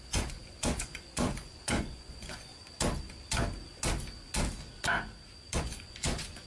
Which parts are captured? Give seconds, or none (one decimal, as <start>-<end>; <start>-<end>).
2.5-5.6